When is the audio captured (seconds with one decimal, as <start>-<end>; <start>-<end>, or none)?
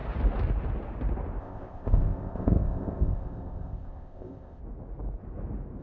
0.0-1.4; 4.6-5.8